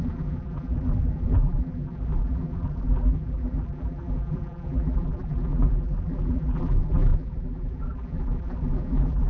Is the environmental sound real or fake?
fake